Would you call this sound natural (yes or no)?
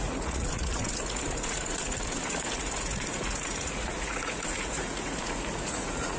no